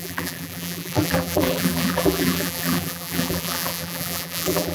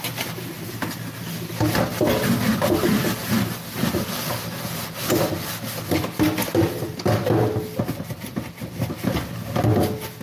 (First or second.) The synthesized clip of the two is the first